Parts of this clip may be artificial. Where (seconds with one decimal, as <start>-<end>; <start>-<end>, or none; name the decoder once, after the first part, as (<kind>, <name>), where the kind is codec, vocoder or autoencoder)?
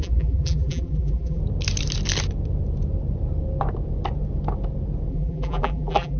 0.0-1.4 (vocoder, BigVGAN v2); 5.1-6.2